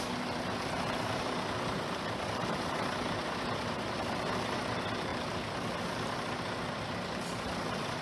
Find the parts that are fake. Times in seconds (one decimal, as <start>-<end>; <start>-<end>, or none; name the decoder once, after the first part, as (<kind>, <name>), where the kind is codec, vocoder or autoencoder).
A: none